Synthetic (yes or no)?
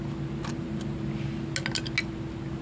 no